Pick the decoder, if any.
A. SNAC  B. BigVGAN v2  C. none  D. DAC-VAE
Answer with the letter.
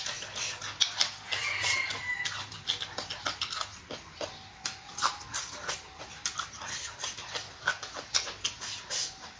C